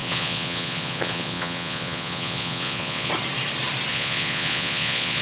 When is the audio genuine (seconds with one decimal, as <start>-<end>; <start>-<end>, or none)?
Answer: 3.1-3.9